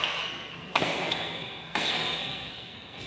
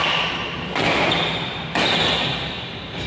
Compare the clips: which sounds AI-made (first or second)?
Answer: first